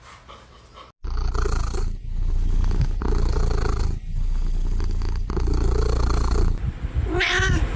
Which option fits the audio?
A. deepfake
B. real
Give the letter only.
B